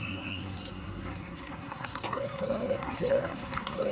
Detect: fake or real fake